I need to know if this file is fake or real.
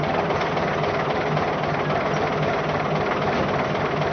real